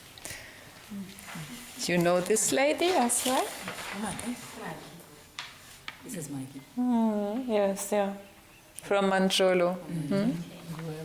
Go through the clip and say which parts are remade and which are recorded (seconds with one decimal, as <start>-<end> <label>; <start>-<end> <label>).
0.0-1.2 recorded; 1.2-5.8 remade; 5.8-11.0 recorded